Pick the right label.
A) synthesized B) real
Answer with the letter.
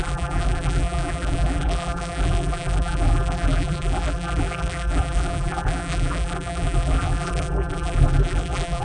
A